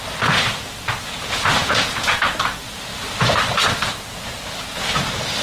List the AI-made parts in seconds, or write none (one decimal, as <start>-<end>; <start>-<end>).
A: 1.6-2.2